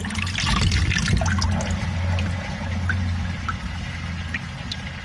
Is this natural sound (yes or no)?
yes